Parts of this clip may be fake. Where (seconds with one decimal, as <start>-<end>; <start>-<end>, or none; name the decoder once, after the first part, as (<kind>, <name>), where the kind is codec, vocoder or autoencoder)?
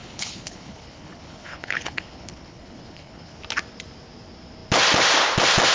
0.0-3.4 (codec, HILCodec)